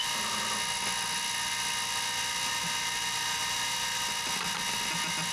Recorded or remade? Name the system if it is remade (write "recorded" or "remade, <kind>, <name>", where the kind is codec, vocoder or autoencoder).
recorded